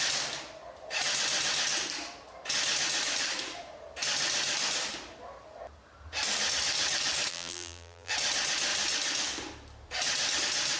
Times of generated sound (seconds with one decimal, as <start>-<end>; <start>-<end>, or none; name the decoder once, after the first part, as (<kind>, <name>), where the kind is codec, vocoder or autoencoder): 7.3-8.1 (vocoder, BigVGAN v2)